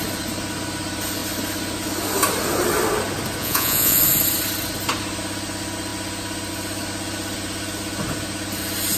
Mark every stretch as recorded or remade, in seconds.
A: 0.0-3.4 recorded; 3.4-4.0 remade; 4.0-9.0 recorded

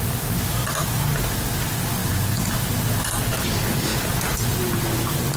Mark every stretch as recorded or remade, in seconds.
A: 0.0-5.4 recorded

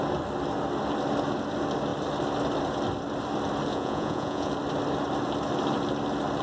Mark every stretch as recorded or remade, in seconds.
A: 0.0-3.7 recorded; 3.7-4.5 remade; 4.5-6.4 recorded

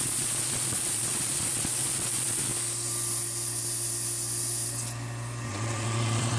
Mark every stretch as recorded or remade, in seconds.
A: 0.0-2.5 remade; 2.5-5.5 recorded; 5.5-6.4 remade

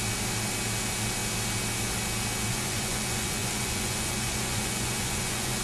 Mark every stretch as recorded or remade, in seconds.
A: 0.0-2.5 recorded; 2.5-5.6 remade

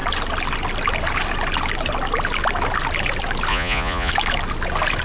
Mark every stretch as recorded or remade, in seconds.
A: 0.0-3.5 recorded; 3.5-4.1 remade; 4.1-5.0 recorded

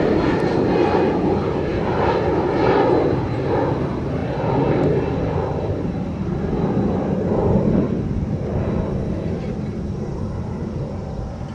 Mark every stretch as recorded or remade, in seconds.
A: 0.0-11.5 recorded

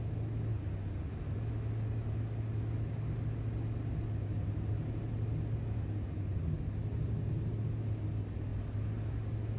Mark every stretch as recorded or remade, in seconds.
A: 0.0-9.6 recorded